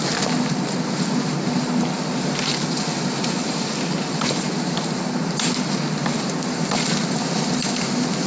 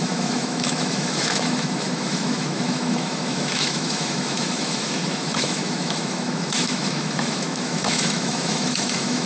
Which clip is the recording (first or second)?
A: first